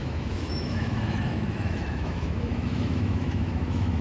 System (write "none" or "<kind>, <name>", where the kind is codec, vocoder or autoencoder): autoencoder, DAC-VAE